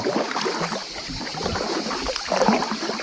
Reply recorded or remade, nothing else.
remade